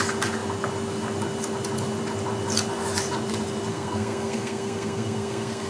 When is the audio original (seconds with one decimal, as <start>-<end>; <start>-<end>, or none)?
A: 0.0-3.7